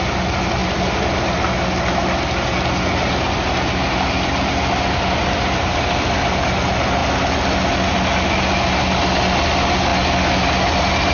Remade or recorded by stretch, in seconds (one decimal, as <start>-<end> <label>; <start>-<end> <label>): 0.0-11.1 recorded